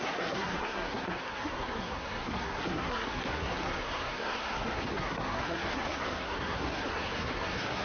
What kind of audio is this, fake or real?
fake